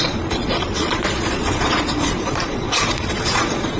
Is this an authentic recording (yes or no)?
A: no